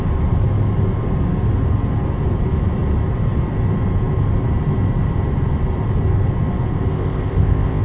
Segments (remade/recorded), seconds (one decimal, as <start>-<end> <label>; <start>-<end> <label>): 0.0-6.9 recorded; 6.9-7.8 remade